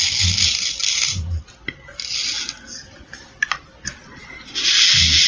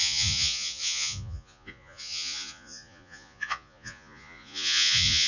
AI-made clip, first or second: second